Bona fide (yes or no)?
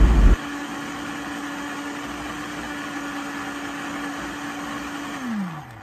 yes